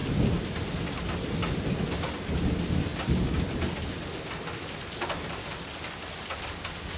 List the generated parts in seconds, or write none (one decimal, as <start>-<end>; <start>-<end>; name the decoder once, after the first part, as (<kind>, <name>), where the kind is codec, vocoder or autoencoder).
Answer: none